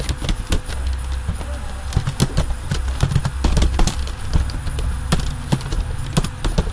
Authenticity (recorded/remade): recorded